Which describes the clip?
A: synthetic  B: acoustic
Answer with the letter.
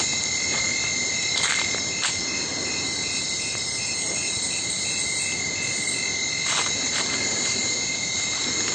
B